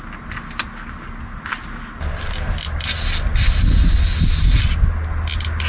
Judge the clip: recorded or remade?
recorded